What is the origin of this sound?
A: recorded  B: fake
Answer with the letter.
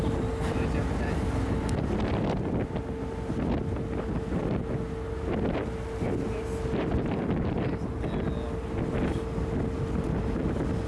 A